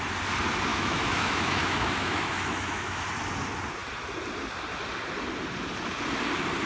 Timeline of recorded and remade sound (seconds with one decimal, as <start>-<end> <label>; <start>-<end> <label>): 0.0-0.7 recorded; 0.7-3.1 remade; 3.1-6.7 recorded